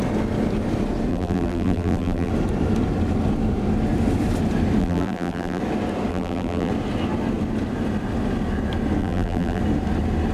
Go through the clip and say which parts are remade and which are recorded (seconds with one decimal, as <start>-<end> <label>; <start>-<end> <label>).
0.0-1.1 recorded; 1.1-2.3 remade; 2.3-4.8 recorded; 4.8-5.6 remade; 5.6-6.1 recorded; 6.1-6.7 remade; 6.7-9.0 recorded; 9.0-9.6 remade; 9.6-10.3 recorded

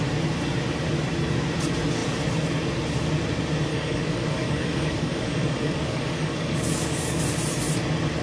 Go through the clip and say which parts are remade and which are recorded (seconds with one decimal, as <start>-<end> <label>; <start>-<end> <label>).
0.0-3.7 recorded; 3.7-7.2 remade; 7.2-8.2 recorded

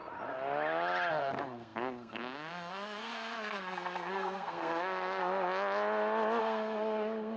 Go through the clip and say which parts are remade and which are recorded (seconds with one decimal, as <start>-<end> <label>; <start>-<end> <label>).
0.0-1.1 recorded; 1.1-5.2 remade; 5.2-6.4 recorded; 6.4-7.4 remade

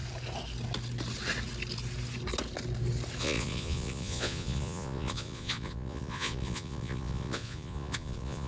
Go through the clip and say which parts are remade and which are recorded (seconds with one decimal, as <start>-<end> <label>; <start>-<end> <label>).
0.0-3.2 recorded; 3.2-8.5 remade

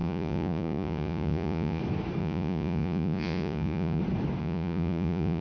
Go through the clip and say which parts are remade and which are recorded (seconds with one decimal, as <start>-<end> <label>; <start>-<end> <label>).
0.0-1.8 remade; 1.8-2.2 recorded; 2.2-4.0 remade; 4.0-4.4 recorded; 4.4-5.4 remade